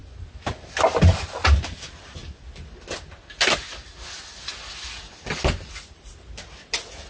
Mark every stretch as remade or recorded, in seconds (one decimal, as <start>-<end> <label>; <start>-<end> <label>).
0.0-7.1 recorded